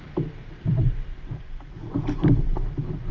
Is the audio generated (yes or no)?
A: yes